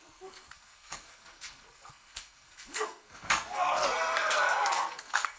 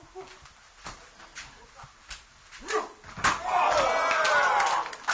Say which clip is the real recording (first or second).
second